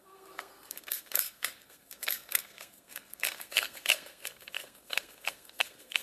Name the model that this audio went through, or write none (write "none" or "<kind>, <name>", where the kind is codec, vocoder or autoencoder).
codec, SNAC